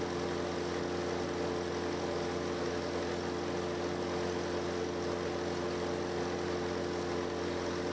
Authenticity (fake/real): real